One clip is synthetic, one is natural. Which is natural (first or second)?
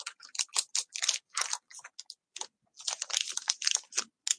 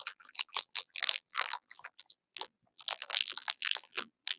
first